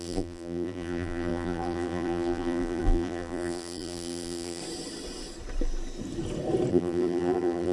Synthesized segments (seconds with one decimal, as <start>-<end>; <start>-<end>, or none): 0.0-4.6; 6.7-7.7